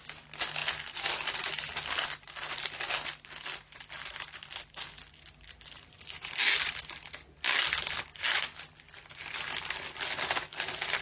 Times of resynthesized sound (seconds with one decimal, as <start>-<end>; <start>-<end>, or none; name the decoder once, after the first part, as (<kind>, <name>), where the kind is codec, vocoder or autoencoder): none